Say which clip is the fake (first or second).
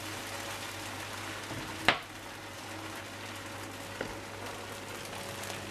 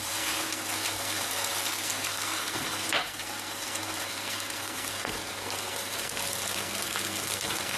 second